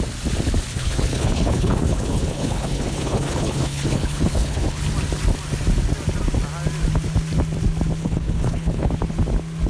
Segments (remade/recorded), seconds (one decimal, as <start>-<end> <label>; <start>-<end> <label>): 0.0-0.7 recorded; 0.7-4.8 remade; 4.8-8.0 recorded; 8.0-8.9 remade; 8.9-9.7 recorded